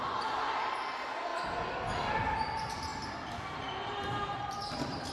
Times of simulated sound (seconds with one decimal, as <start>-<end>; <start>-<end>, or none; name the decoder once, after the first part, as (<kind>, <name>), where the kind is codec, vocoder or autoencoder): 0.0-1.3 (vocoder, BigVGAN v2); 2.1-2.9; 3.7-5.1